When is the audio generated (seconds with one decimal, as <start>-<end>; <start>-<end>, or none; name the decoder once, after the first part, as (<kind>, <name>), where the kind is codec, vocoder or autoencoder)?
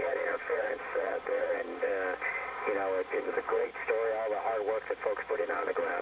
0.0-1.9 (vocoder, Vocos); 3.2-3.7; 5.3-6.0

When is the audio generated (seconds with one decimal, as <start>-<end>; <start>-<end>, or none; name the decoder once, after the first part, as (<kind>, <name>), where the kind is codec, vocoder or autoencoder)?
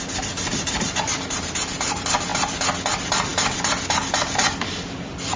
none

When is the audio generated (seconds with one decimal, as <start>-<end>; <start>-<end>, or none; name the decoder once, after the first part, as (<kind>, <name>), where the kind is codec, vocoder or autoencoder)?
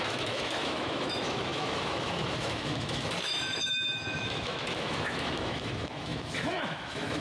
0.0-7.2 (autoencoder, DAC-VAE)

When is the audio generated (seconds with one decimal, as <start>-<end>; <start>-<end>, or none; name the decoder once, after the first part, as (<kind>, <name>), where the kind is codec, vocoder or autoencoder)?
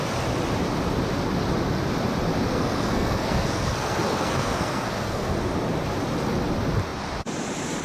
2.5-5.3 (codec, SNAC)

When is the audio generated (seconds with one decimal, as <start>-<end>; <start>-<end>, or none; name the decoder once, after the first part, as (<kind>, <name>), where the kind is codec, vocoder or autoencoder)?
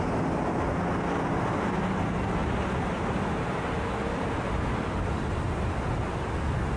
none